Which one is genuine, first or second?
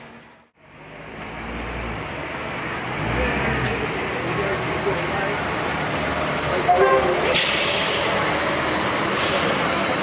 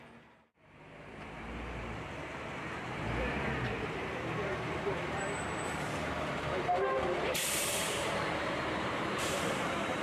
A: first